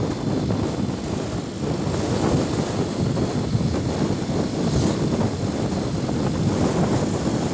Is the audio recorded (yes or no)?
yes